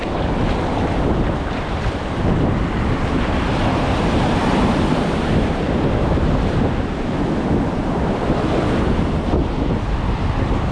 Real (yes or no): no